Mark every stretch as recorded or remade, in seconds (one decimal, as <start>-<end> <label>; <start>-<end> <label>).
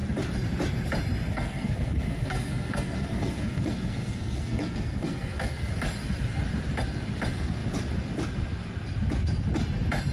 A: 0.0-1.3 recorded; 1.3-5.7 remade; 5.7-10.1 recorded